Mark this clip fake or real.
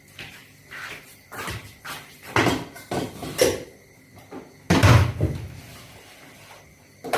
real